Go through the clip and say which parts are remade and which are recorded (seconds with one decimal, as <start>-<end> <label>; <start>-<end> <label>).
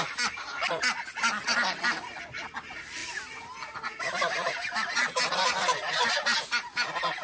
0.0-7.2 recorded